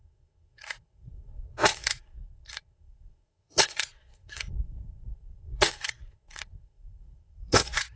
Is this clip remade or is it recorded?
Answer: remade